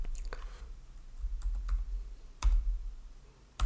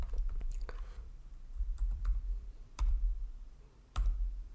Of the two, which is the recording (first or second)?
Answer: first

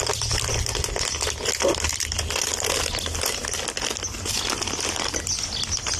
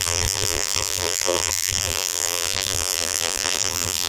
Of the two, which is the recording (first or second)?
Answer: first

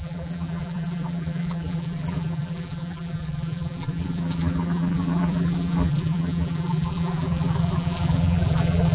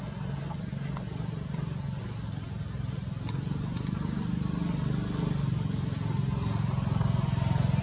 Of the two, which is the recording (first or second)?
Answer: second